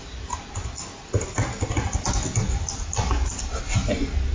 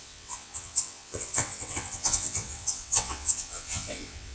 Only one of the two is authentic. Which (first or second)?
first